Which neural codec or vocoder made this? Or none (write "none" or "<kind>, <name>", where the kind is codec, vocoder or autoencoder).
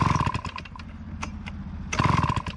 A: none